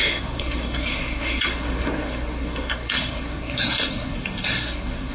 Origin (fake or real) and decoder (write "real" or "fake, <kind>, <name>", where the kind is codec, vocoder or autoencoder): fake, codec, SNAC